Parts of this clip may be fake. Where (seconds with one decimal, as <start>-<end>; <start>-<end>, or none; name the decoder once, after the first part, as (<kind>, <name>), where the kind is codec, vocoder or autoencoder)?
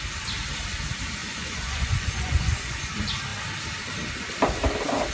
1.2-2.9 (vocoder, Vocos)